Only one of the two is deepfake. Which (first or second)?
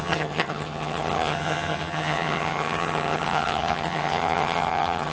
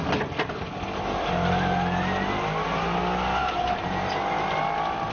first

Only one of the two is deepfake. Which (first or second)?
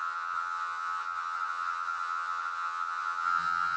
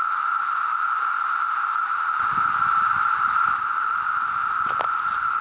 first